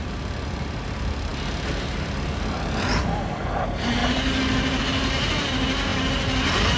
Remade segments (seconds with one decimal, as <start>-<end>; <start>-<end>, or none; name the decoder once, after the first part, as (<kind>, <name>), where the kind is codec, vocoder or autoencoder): none